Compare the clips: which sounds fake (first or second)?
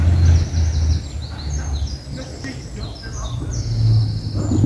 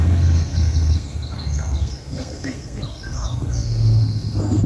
second